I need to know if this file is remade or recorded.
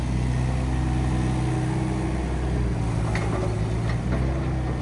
recorded